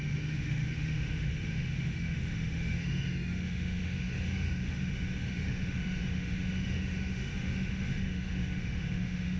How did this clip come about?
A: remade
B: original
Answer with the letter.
A